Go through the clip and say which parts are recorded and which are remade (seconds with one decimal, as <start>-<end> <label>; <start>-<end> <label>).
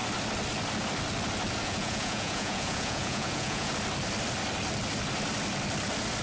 0.0-1.6 recorded; 1.6-3.7 remade; 3.7-6.2 recorded